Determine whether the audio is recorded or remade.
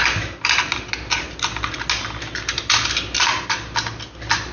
recorded